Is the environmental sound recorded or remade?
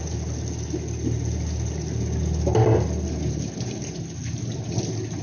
recorded